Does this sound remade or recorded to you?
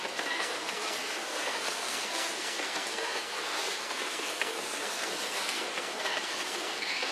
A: remade